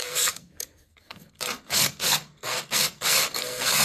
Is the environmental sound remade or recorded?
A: remade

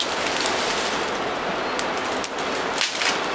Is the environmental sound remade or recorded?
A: recorded